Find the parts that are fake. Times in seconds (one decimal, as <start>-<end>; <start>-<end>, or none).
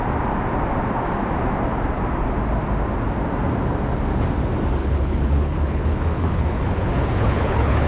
4.8-7.9